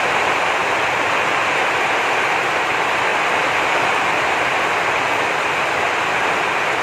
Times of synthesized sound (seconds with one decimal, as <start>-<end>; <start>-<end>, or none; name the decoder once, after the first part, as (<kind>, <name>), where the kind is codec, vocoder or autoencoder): 0.0-0.6 (vocoder, BigVGAN v2); 1.6-6.8